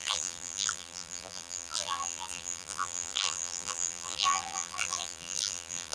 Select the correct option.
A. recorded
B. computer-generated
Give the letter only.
B